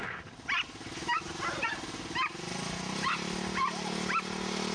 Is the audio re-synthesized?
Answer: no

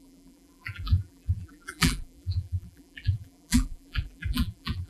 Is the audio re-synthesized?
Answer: yes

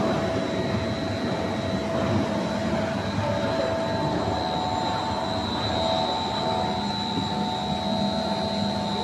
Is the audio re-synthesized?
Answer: no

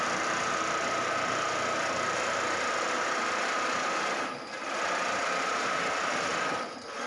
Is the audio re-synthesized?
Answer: no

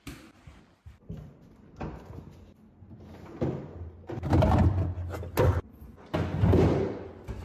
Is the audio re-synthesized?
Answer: no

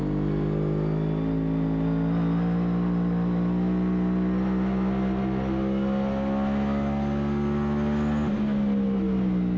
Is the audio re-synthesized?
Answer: no